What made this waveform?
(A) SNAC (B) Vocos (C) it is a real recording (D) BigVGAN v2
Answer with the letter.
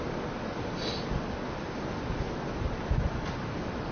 C